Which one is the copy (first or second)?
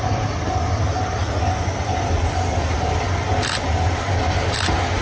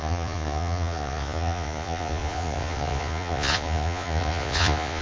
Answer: second